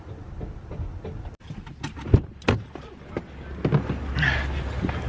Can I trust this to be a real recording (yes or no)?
yes